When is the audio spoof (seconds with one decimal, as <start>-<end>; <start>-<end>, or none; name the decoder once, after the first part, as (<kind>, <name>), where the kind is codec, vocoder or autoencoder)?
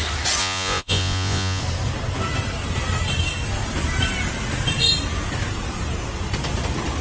0.4-1.6 (vocoder, Vocos)